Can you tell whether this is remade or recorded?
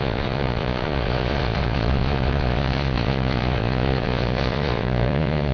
remade